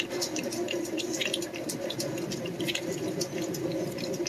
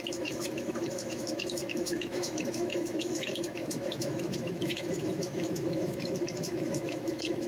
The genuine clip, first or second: first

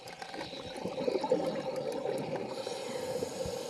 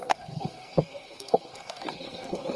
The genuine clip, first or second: first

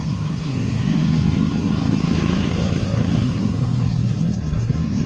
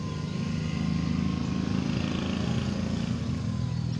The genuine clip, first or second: second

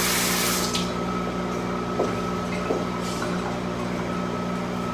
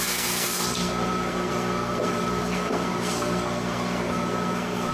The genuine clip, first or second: first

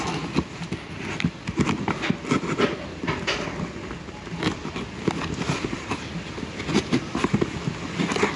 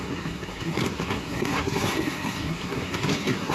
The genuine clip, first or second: first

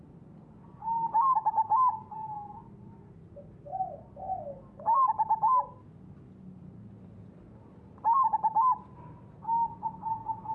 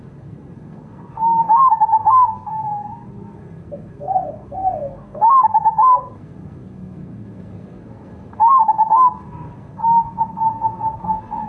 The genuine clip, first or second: first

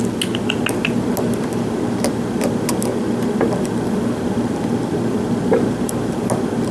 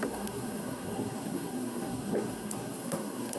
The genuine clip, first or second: first